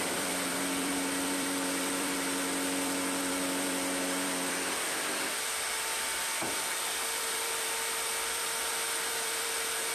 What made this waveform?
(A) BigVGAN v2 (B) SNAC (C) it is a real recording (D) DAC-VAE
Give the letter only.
A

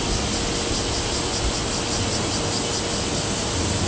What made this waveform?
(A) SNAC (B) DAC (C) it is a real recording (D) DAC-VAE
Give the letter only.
C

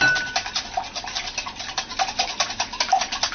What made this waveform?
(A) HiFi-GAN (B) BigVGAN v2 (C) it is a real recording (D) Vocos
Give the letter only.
C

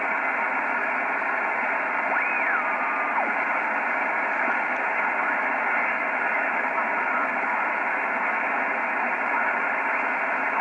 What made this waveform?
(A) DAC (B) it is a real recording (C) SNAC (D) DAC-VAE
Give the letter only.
B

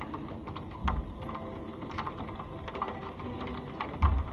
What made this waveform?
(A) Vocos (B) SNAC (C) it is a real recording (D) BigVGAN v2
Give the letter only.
C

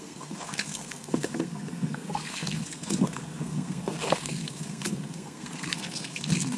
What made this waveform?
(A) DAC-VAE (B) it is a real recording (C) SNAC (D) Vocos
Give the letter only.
C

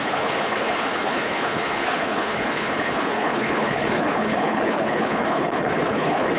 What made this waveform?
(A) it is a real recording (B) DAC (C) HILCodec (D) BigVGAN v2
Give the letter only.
C